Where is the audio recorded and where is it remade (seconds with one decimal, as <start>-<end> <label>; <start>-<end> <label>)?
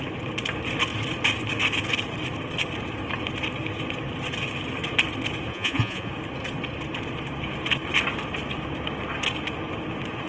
0.0-5.5 recorded; 5.5-6.1 remade; 6.1-10.3 recorded